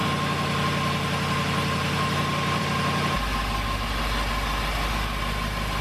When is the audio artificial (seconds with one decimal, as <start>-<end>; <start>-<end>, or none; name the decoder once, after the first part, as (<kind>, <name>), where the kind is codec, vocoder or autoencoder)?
none